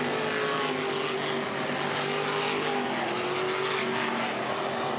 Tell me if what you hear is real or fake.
real